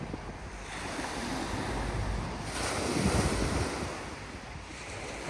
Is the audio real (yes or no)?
yes